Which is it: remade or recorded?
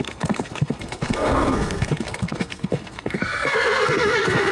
remade